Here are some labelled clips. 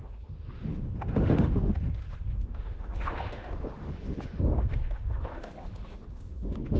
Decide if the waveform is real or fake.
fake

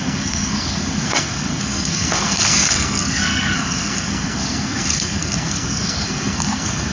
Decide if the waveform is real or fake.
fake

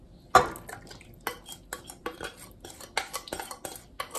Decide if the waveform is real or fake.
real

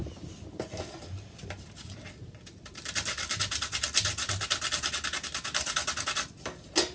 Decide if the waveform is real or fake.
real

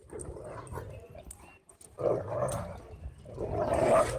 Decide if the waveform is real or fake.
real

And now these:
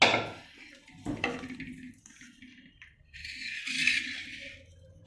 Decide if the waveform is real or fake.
real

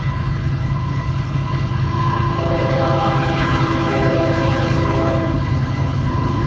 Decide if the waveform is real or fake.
fake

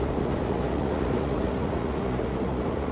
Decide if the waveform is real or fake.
fake